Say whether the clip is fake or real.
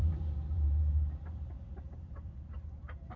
fake